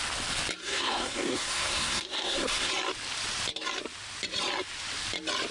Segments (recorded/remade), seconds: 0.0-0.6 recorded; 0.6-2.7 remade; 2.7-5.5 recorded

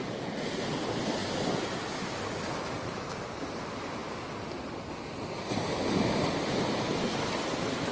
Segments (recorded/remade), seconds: 0.0-7.9 recorded

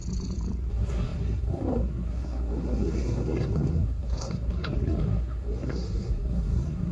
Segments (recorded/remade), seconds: 0.0-0.7 recorded; 0.7-6.9 remade

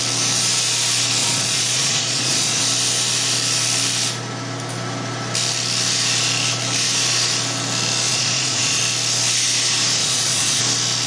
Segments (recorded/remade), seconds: 0.0-1.2 recorded; 1.2-2.6 remade; 2.6-8.1 recorded; 8.1-8.8 remade; 8.8-10.0 recorded; 10.0-10.6 remade; 10.6-11.1 recorded

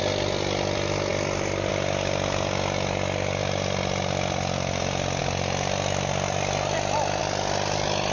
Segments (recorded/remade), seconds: 0.0-8.1 recorded

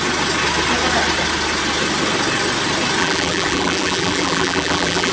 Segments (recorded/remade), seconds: 0.0-3.0 recorded; 3.0-5.1 remade